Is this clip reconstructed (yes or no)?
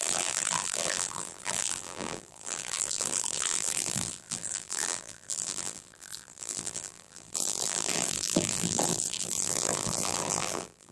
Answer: yes